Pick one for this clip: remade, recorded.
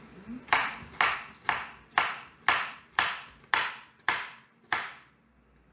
recorded